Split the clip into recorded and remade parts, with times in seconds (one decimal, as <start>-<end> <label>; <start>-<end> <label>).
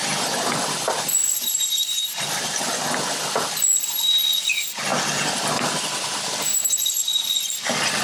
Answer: 0.0-1.2 recorded; 1.2-2.4 remade; 2.4-8.0 recorded